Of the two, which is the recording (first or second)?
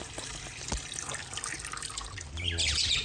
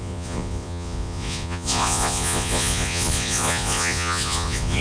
first